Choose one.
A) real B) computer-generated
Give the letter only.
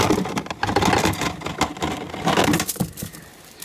A